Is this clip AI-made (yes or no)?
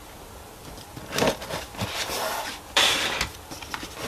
yes